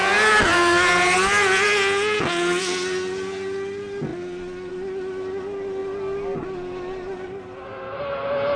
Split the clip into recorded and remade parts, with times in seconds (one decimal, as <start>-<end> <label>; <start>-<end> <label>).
0.0-8.6 recorded